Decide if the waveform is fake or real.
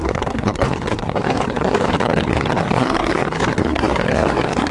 fake